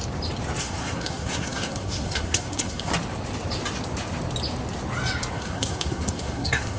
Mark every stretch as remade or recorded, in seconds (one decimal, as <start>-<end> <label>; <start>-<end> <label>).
0.0-0.6 recorded; 0.6-2.9 remade; 2.9-5.3 recorded; 5.3-6.8 remade